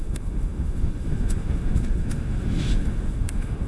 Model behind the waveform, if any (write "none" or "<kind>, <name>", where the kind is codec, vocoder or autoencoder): autoencoder, DAC-VAE